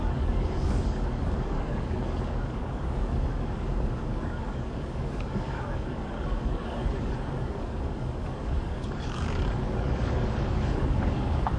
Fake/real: fake